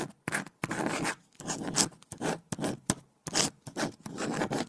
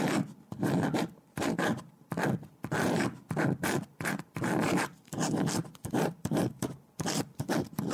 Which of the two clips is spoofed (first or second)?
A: second